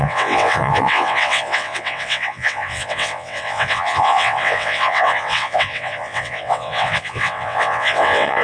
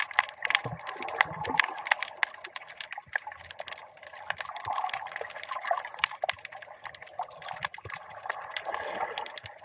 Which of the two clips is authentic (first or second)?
second